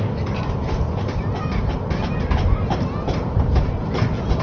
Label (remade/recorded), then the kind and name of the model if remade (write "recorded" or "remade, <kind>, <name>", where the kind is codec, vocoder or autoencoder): recorded